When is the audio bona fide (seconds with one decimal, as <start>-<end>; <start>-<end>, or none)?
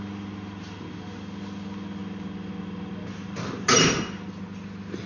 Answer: 0.0-5.1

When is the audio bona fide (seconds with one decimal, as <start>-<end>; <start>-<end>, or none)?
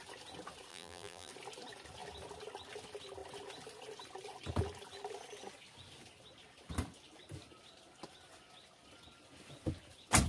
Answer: 0.0-0.7; 1.3-10.3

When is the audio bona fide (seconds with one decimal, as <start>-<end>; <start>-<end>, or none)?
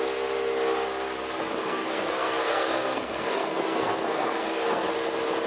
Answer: 0.0-1.6; 4.9-5.5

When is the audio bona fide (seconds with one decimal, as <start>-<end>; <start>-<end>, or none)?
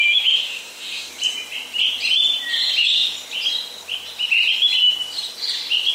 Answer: 1.1-5.9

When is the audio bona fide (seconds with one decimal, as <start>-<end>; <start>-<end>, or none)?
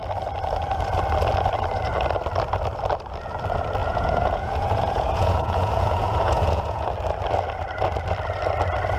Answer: 0.0-3.8; 6.9-9.0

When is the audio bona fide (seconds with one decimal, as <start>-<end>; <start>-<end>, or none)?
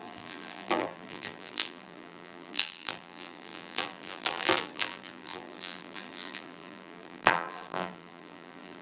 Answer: none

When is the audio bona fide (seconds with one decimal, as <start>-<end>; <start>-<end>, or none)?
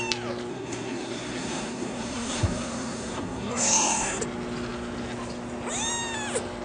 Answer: 0.0-0.5; 4.2-6.6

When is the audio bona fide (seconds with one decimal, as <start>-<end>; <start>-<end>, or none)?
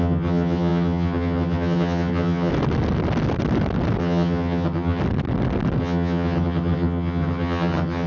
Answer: 2.5-4.0; 5.0-5.8